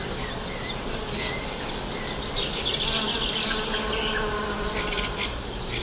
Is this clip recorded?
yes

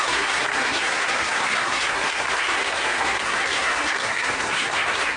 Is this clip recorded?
no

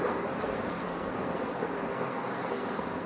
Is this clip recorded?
no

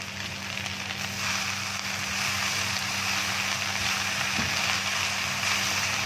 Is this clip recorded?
yes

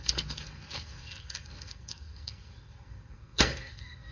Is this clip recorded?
no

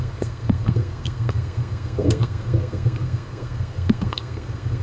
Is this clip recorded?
no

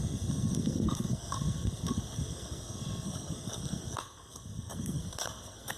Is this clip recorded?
no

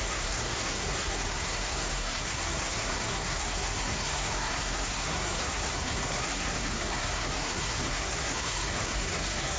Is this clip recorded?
no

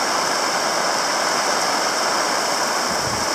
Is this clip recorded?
yes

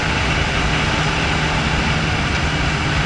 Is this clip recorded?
yes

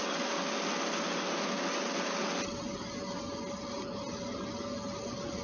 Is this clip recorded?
yes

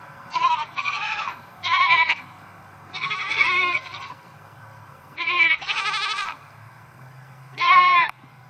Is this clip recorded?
no